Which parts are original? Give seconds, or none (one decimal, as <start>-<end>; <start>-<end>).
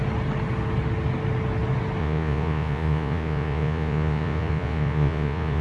0.0-2.0